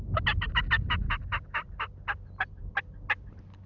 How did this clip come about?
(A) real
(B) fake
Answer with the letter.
A